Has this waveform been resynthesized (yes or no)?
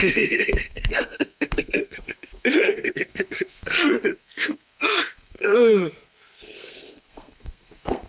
yes